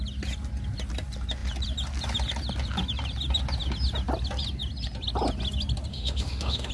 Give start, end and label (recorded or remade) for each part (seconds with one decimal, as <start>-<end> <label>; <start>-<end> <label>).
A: 0.0-5.9 recorded; 5.9-6.7 remade